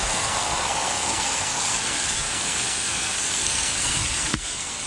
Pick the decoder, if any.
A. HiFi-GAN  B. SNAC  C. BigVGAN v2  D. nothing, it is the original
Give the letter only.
B